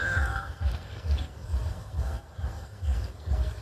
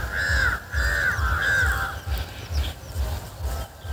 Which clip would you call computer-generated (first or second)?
first